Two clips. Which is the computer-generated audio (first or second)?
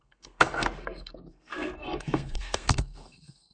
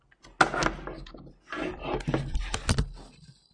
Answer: first